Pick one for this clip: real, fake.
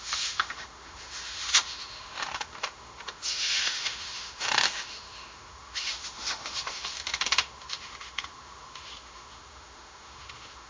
fake